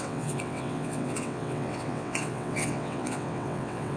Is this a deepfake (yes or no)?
yes